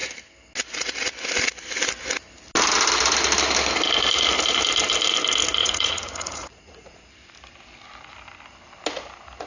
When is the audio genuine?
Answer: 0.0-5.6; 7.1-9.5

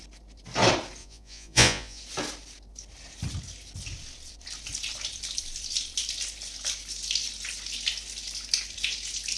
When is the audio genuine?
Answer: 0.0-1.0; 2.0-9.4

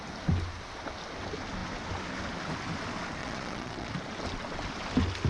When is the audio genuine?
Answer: 0.0-3.2; 3.9-5.3

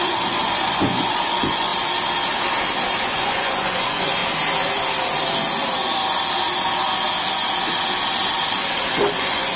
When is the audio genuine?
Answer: 1.7-3.0; 4.2-9.1

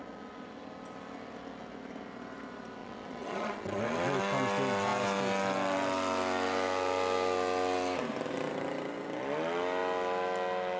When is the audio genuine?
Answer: 0.0-2.8; 3.8-10.8

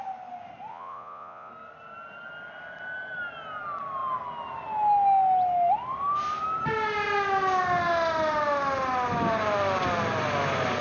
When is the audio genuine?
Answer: 0.0-0.7; 1.5-10.8

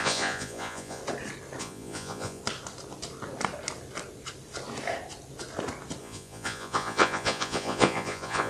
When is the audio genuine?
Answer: 1.0-1.6; 2.4-6.0

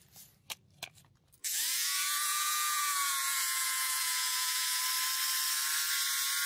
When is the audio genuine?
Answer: 0.0-1.4; 4.8-6.5